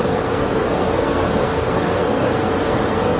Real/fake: fake